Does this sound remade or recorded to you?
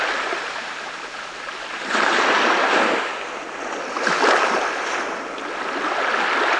recorded